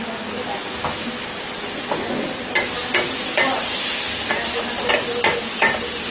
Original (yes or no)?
yes